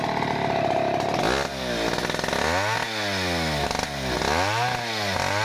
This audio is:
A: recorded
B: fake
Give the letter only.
A